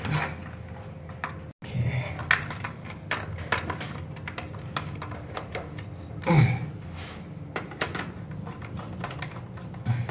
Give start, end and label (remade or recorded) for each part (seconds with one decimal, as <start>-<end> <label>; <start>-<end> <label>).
0.0-10.1 recorded